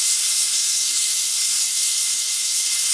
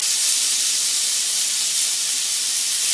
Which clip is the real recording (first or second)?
second